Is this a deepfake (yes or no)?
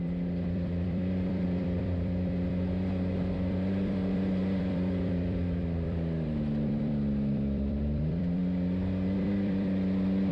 yes